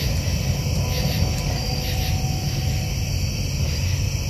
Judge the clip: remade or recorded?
recorded